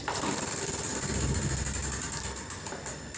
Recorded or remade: remade